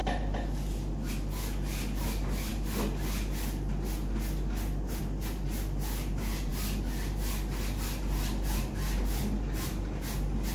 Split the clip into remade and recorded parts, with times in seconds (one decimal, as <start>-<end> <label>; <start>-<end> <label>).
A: 0.0-10.5 recorded